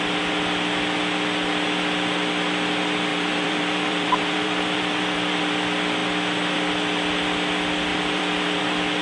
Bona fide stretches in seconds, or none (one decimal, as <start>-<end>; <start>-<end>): 0.0-3.1; 5.4-7.9; 8.6-9.0